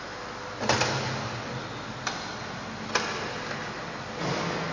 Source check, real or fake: real